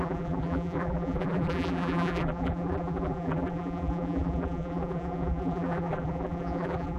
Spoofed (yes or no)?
yes